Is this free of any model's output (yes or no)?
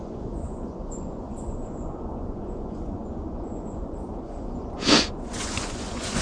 no